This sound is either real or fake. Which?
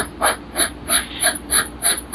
real